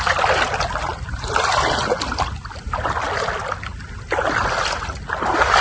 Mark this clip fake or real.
real